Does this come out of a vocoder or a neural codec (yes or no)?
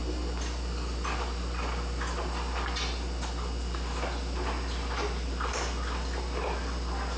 no